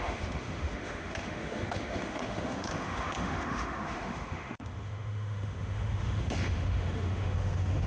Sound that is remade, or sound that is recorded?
remade